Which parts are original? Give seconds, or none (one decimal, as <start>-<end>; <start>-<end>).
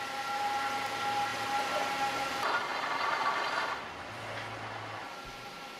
0.0-1.3; 2.2-2.7